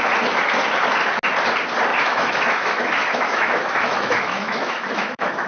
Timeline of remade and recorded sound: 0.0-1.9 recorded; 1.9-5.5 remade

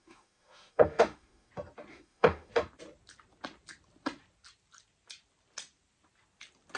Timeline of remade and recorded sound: 0.0-1.5 remade; 1.5-1.9 recorded; 1.9-2.5 remade; 2.5-6.8 recorded

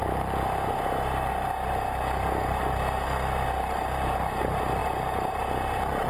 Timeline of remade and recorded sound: 0.0-6.1 recorded

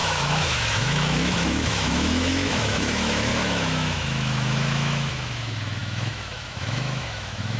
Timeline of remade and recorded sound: 0.0-7.6 remade

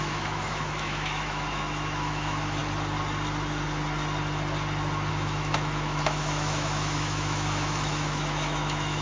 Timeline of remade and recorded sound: 0.0-2.6 remade; 2.6-5.1 recorded; 5.1-9.0 remade

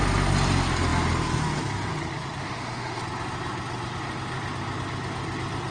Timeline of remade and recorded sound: 0.0-2.4 recorded; 2.4-3.0 remade; 3.0-5.7 recorded